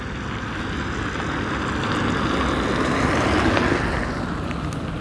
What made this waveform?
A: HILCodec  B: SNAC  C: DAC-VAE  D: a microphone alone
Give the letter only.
D